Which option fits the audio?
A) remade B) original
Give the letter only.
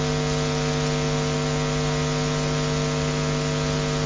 B